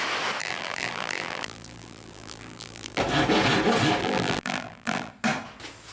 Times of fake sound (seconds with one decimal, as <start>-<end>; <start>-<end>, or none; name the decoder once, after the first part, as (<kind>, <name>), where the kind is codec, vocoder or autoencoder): 0.4-3.0 (vocoder, BigVGAN v2); 4.0-5.1